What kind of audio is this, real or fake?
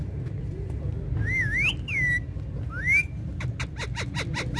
real